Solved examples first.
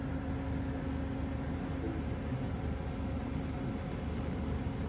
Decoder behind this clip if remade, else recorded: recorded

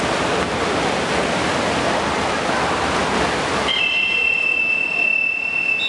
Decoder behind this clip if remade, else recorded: recorded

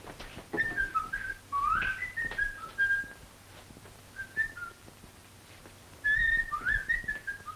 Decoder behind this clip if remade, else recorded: recorded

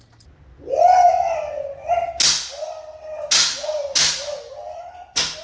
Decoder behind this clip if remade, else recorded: recorded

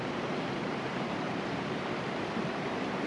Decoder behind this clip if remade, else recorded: remade, vocoder, BigVGAN v2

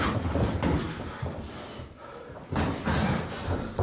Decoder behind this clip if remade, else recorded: recorded